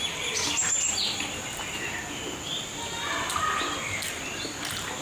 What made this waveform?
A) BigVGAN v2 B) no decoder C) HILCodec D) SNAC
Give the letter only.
B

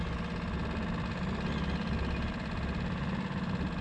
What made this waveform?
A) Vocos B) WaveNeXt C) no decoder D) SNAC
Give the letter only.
C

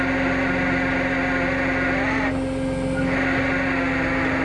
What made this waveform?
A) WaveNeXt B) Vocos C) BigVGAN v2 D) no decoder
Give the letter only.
D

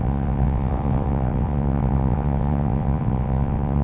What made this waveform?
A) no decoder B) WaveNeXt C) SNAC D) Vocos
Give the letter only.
B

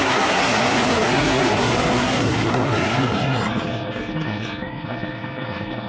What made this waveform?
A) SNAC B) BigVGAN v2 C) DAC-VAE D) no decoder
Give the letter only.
A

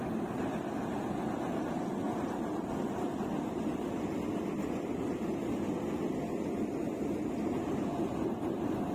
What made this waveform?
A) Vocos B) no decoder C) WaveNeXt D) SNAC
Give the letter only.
B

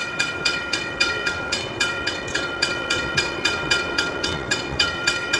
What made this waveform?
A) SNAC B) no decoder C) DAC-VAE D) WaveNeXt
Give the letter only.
D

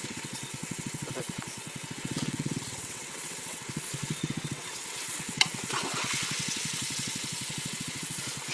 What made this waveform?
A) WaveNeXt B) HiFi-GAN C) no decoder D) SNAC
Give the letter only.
A